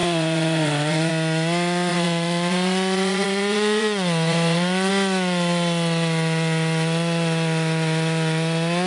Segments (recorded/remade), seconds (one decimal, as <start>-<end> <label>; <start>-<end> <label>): 0.0-1.1 remade; 1.1-1.9 recorded; 1.9-4.9 remade; 4.9-8.9 recorded